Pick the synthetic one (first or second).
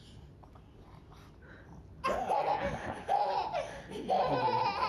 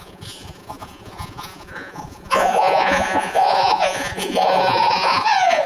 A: second